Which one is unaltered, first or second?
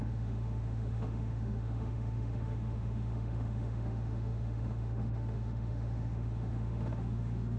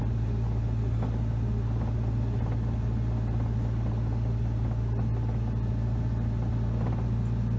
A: second